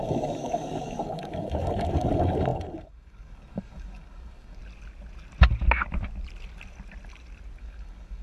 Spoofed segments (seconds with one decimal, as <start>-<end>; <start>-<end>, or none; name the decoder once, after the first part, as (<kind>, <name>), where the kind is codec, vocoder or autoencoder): 0.0-4.6 (codec, DAC); 7.6-8.2